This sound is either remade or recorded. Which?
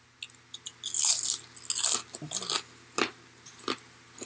recorded